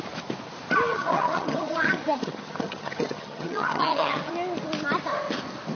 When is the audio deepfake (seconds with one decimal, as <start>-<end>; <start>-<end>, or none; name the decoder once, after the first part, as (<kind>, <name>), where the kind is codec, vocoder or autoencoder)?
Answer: 0.9-4.3 (vocoder, HiFi-GAN)